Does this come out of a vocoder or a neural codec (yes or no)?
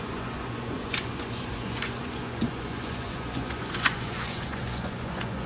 yes